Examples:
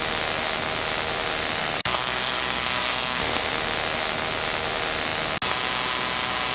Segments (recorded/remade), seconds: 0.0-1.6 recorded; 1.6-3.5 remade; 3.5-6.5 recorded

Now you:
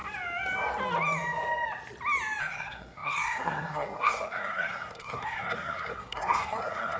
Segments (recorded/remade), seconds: 0.0-2.4 recorded; 2.4-7.0 remade